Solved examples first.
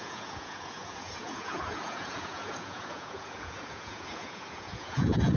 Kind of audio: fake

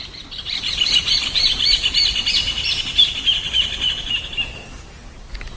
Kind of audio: real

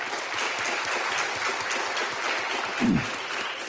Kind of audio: real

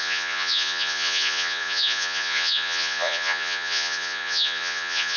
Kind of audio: fake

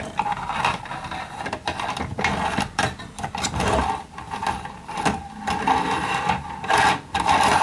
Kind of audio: real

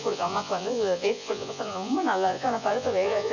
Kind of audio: fake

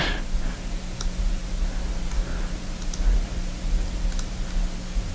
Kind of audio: real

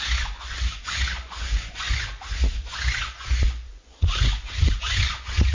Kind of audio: fake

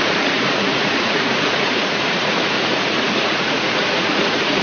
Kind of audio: fake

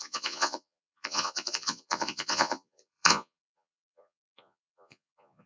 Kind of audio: fake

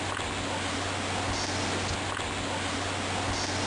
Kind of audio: real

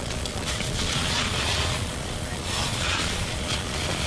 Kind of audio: fake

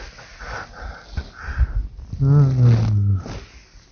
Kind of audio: real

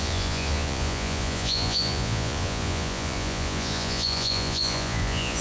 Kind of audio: fake